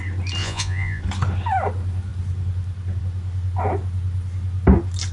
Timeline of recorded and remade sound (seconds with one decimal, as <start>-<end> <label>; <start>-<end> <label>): 0.0-0.4 recorded; 0.4-1.0 remade; 1.0-5.1 recorded